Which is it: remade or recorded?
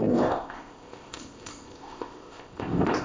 remade